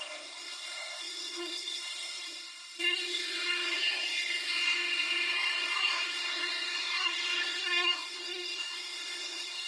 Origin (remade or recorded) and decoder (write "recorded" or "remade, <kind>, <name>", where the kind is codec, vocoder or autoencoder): remade, codec, SNAC